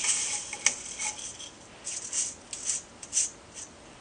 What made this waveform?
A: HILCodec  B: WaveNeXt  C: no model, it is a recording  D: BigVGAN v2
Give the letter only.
C